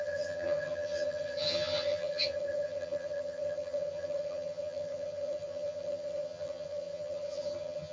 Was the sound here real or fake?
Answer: fake